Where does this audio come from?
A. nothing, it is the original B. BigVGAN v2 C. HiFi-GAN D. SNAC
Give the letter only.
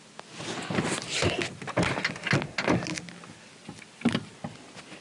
A